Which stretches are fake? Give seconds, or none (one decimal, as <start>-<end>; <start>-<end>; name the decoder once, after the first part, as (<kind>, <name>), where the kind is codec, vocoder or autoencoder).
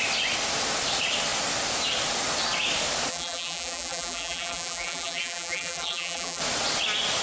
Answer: 3.1-6.4 (vocoder, BigVGAN v2)